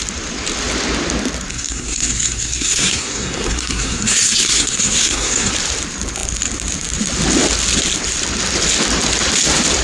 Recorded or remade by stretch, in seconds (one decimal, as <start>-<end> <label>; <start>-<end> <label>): 0.0-1.5 recorded; 1.5-5.5 remade; 5.5-9.8 recorded